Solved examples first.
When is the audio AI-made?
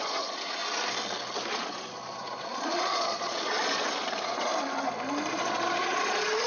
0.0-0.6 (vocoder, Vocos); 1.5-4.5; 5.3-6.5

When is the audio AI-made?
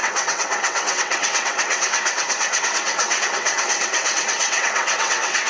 0.0-5.5 (vocoder, WaveNeXt)